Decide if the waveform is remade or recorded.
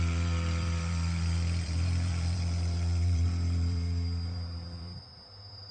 remade